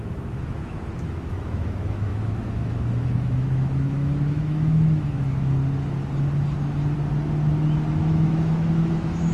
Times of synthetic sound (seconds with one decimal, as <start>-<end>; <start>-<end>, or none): 0.0-5.6; 8.0-9.3